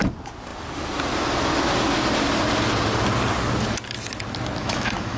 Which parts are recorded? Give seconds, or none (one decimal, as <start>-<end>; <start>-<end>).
0.0-4.6